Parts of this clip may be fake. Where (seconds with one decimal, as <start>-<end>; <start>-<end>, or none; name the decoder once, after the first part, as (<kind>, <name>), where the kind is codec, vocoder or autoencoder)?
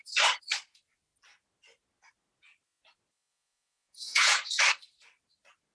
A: 3.3-4.4 (vocoder, Vocos)